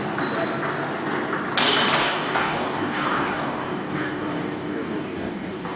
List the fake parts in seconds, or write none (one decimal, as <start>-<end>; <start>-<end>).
2.0-5.8